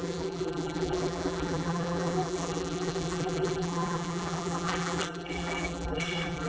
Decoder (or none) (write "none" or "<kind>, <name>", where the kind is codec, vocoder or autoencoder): vocoder, BigVGAN v2